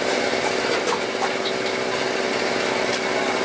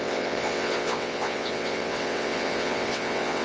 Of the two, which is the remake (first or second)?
second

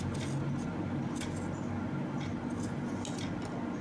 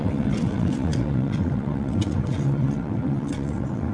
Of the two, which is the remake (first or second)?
second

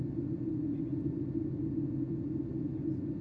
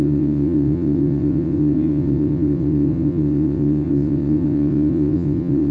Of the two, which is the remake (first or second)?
second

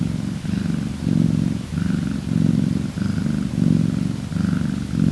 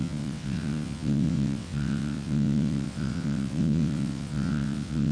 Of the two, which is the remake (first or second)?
second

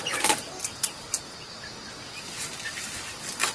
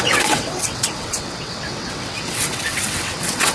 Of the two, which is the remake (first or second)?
second